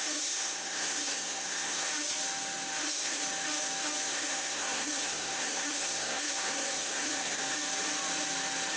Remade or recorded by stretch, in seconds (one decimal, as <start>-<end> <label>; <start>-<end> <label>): 0.0-1.9 remade; 1.9-2.8 recorded; 2.8-3.2 remade; 3.2-4.1 recorded; 4.1-7.4 remade; 7.4-8.8 recorded